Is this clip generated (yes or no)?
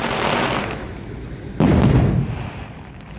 no